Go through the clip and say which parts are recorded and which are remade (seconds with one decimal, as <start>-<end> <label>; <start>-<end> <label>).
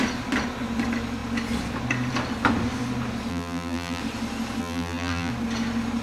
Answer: 0.0-3.3 recorded; 3.3-4.0 remade; 4.0-4.6 recorded; 4.6-5.3 remade; 5.3-6.0 recorded